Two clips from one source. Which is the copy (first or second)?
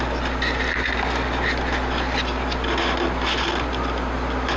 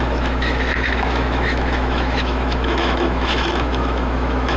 second